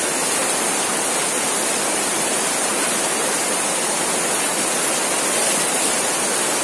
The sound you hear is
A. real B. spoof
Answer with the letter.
A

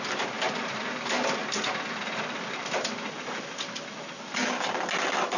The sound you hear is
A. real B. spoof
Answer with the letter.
A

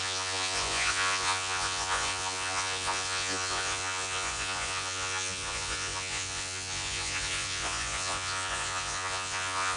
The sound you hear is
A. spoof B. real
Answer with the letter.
A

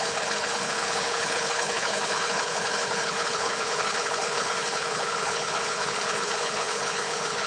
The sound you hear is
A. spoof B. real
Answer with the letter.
A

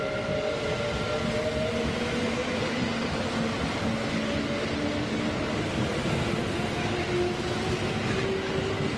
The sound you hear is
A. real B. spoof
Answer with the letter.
A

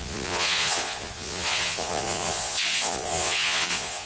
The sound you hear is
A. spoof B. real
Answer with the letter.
A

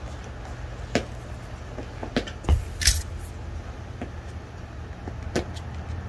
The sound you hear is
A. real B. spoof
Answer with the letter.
A